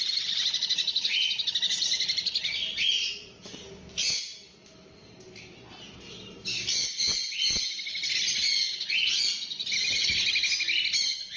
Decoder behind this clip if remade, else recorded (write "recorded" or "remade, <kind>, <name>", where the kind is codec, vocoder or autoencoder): recorded